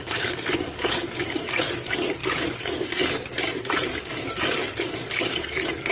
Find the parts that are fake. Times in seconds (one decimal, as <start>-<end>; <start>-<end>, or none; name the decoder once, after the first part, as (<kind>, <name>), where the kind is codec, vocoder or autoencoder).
0.0-5.9 (codec, DAC)